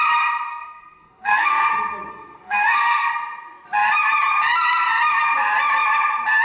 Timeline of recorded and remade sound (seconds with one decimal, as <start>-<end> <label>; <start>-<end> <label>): 0.0-0.5 recorded; 0.5-1.7 remade; 1.7-2.1 recorded; 2.1-3.1 remade; 3.1-6.4 recorded